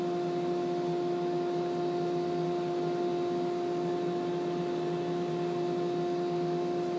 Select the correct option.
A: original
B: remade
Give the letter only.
A